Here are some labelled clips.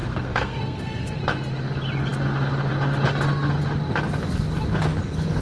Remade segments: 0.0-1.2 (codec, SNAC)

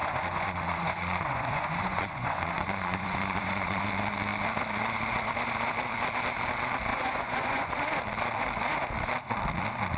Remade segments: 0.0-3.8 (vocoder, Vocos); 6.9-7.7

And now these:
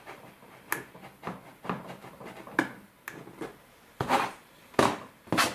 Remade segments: none